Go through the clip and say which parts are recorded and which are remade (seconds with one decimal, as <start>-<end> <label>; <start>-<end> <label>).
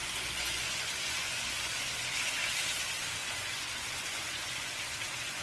0.0-2.4 remade; 2.4-3.2 recorded; 3.2-5.4 remade